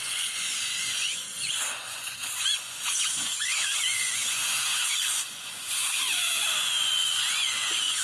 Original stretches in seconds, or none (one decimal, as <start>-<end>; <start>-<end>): none